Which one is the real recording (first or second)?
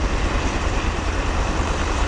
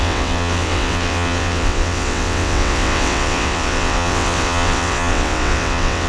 first